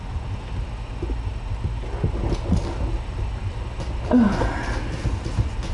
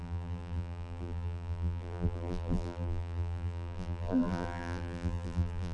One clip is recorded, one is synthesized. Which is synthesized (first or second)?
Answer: second